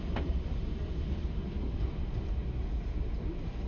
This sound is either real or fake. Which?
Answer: real